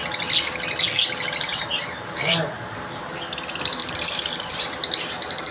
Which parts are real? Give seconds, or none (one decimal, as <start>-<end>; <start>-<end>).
0.0-1.5; 3.2-3.8